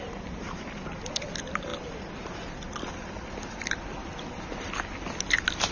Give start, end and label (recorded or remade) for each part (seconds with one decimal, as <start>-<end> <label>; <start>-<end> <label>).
0.0-1.7 recorded; 1.7-3.8 remade; 3.8-5.7 recorded